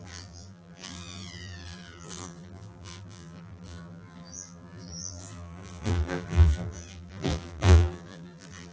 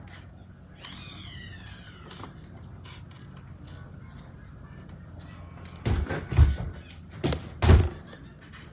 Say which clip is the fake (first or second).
first